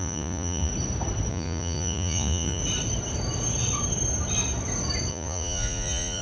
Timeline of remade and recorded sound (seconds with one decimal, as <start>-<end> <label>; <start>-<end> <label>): 0.0-0.7 remade; 0.7-1.3 recorded; 1.3-2.6 remade; 2.6-5.1 recorded; 5.1-6.2 remade